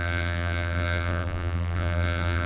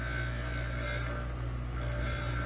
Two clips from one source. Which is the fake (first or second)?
first